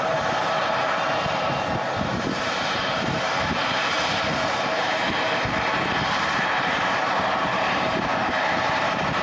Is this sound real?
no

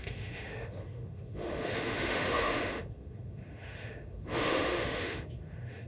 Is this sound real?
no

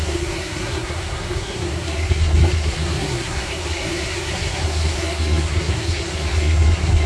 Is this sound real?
no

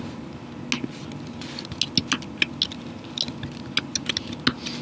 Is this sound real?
yes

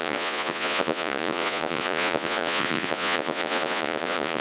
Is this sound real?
no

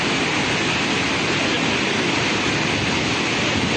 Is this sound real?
yes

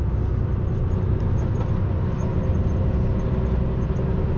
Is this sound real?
yes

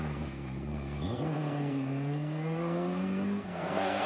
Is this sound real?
no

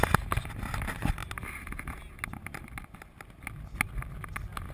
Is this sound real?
yes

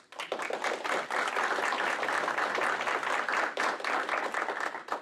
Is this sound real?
yes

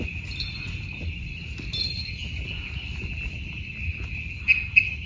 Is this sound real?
yes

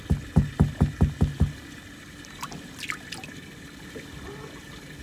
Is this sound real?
yes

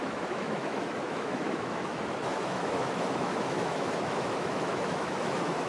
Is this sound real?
no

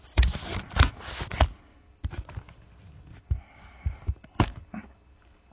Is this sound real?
yes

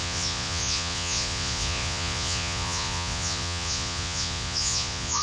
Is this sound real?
no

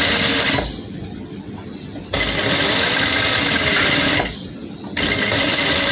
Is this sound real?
yes